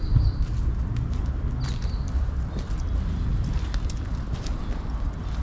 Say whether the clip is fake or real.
real